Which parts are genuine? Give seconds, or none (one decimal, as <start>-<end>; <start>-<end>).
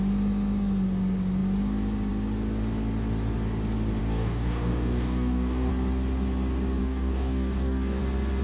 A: 0.0-4.0; 5.7-6.8; 8.0-8.4